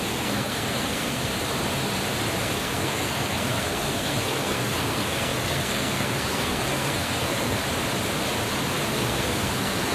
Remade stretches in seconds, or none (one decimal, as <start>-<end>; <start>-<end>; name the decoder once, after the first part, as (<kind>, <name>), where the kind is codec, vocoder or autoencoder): 0.0-1.3 (codec, SNAC); 2.4-7.6; 8.9-9.9